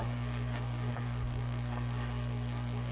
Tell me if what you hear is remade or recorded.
remade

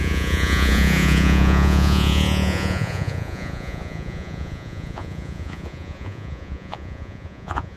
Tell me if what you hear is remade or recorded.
remade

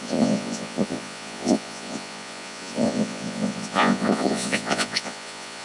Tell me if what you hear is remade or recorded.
remade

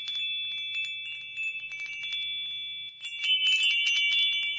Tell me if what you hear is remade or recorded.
recorded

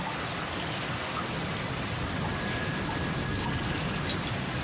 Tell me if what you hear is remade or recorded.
recorded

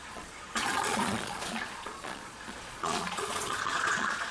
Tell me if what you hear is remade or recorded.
remade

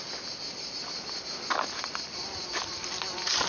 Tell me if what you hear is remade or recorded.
recorded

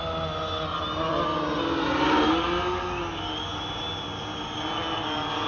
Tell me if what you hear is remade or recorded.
recorded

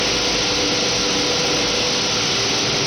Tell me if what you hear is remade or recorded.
recorded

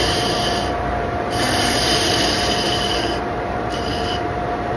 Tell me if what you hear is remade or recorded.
remade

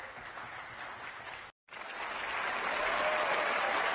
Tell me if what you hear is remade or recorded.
recorded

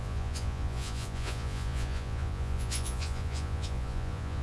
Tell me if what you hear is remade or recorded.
remade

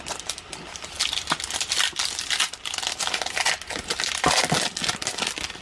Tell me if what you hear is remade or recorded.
recorded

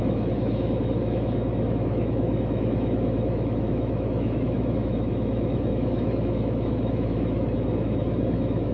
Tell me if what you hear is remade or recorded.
remade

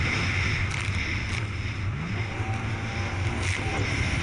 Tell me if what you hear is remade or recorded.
recorded